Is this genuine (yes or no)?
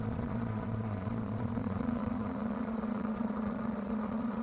no